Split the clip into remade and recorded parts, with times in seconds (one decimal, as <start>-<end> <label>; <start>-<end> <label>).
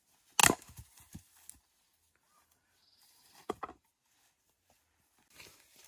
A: 0.0-2.3 recorded; 2.3-3.6 remade; 3.6-5.9 recorded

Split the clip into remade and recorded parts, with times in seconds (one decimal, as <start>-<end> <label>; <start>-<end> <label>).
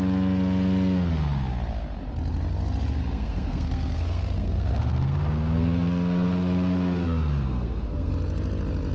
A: 0.0-3.0 recorded; 3.0-8.1 remade; 8.1-8.9 recorded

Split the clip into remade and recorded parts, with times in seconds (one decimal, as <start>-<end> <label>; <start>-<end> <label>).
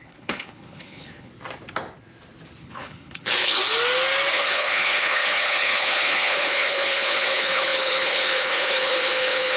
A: 0.0-1.3 remade; 1.3-2.6 recorded; 2.6-3.6 remade; 3.6-4.3 recorded; 4.3-9.6 remade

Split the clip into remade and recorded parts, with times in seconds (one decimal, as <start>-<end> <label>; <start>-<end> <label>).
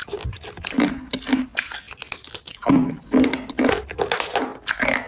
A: 0.0-5.1 recorded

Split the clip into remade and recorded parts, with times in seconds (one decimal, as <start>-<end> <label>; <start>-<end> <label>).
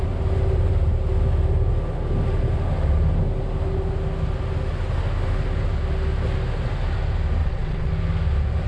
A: 0.0-7.4 recorded; 7.4-7.9 remade; 7.9-8.7 recorded